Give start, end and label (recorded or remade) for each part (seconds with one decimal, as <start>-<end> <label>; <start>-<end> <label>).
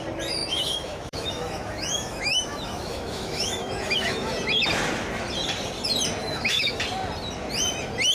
0.0-0.4 recorded; 0.4-4.3 remade; 4.3-6.2 recorded; 6.2-6.8 remade; 6.8-8.1 recorded